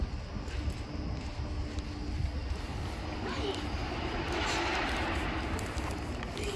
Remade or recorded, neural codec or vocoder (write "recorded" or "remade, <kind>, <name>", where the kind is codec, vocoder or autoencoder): recorded